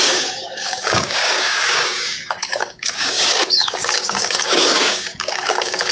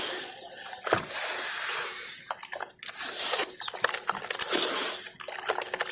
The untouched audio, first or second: second